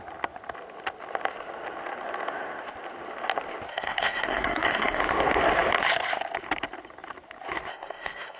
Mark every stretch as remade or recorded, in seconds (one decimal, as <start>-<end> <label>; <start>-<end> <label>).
0.0-3.7 recorded; 3.7-5.0 remade; 5.0-7.7 recorded; 7.7-8.4 remade